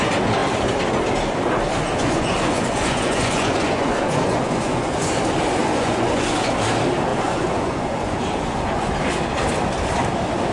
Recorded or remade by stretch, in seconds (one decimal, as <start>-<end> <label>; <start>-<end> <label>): 0.0-2.0 recorded; 2.0-5.1 remade; 5.1-5.6 recorded; 5.6-6.5 remade; 6.5-7.1 recorded; 7.1-8.9 remade; 8.9-10.5 recorded